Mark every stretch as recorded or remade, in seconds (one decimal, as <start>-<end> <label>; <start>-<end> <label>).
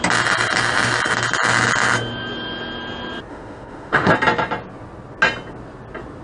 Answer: 0.0-3.3 recorded; 3.3-4.1 remade; 4.1-6.2 recorded